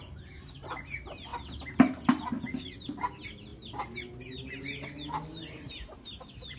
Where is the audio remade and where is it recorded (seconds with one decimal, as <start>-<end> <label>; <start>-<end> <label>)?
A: 0.0-6.6 recorded